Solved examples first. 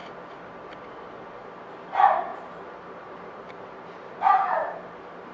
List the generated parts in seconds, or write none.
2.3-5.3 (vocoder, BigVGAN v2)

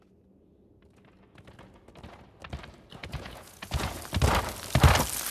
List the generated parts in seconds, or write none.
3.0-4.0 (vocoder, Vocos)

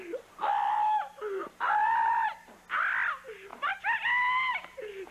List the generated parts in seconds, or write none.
1.4-2.3 (vocoder, BigVGAN v2)

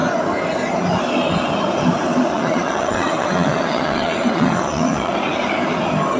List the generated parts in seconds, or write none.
2.3-5.1 (vocoder, WaveNeXt)

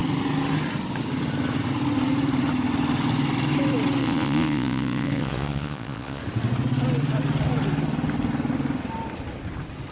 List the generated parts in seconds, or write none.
4.0-6.2 (vocoder, Vocos)